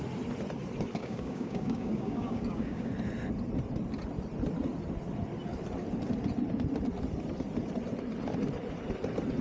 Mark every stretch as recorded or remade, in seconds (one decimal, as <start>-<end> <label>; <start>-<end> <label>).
0.0-1.0 recorded; 1.0-2.9 remade; 2.9-9.4 recorded